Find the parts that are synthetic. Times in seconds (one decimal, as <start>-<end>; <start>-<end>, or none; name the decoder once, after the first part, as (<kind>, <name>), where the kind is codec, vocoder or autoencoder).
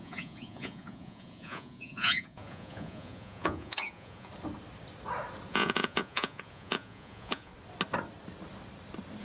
0.0-4.3 (vocoder, Vocos); 5.5-7.5